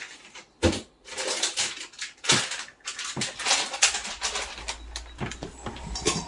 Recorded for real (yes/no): yes